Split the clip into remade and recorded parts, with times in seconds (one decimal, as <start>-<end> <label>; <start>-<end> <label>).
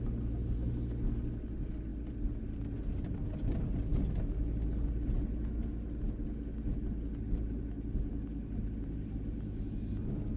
0.0-10.4 recorded